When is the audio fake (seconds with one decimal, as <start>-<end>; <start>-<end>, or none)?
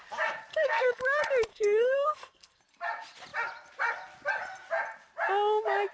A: 0.5-1.0; 1.5-2.6